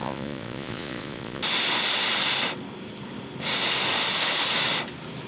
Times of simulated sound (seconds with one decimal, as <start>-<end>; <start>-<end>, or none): 0.0-1.4